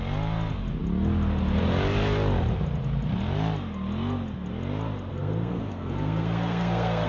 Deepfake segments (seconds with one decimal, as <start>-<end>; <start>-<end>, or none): 5.1-7.1